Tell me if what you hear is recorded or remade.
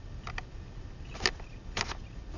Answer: recorded